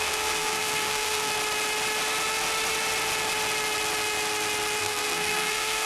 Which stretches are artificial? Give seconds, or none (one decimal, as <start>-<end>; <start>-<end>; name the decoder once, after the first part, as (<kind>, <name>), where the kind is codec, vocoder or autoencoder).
0.0-1.3 (codec, SNAC); 4.8-5.9